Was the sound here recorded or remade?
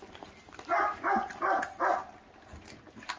recorded